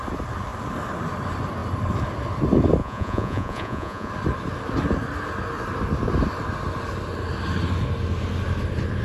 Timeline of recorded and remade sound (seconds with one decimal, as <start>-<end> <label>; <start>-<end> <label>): 0.0-2.8 recorded; 2.8-4.1 remade; 4.1-9.0 recorded